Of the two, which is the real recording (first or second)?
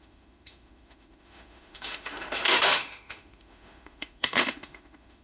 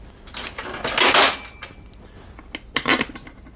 second